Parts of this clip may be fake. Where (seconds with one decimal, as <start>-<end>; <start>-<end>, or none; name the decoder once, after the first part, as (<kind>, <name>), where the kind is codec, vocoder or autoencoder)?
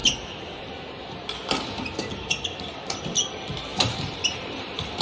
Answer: 0.0-2.2 (vocoder, BigVGAN v2); 3.7-5.0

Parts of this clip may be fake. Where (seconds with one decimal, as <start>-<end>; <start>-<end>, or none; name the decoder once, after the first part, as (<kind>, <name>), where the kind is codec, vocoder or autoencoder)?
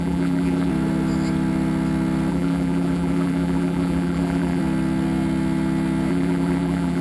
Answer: 0.0-0.7 (vocoder, BigVGAN v2); 2.3-4.6; 6.1-7.0